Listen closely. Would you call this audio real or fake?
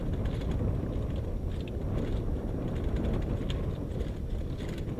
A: real